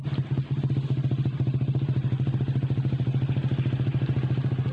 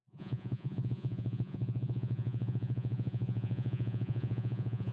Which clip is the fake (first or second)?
second